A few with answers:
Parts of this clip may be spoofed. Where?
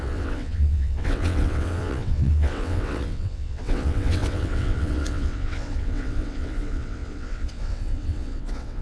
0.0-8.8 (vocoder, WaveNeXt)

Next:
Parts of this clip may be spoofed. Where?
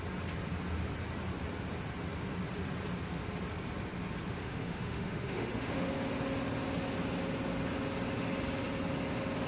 4.4-5.9 (autoencoder, DAC-VAE)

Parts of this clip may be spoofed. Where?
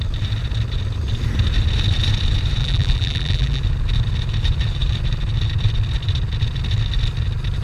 2.6-3.6 (vocoder, BigVGAN v2)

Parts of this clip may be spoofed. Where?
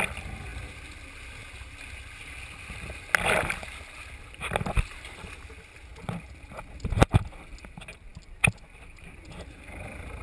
none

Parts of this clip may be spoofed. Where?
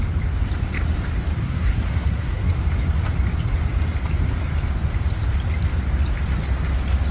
1.4-2.5 (codec, SNAC)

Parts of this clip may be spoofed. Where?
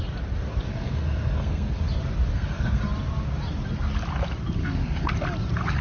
0.7-1.8 (codec, SNAC); 2.3-2.8; 4.6-5.1